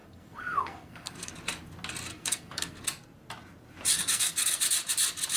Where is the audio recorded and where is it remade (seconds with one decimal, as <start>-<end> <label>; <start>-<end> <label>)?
0.0-1.3 remade; 1.3-2.1 recorded; 2.1-2.8 remade; 2.8-3.9 recorded; 3.9-4.6 remade; 4.6-5.4 recorded